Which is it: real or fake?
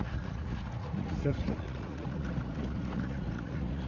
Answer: fake